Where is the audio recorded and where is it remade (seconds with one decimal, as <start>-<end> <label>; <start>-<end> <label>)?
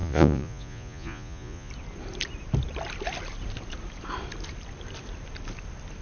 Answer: 0.0-1.7 remade; 1.7-6.0 recorded